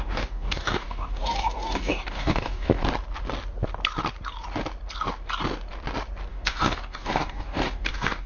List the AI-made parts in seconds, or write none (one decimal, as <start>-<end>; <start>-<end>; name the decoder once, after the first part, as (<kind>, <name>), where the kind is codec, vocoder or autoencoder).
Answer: 0.0-2.8 (codec, DAC); 6.3-8.3